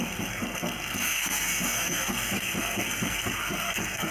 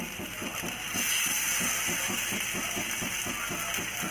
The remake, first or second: first